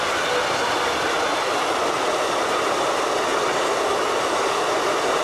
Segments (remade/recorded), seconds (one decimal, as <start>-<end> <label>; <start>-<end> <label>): 0.0-5.2 recorded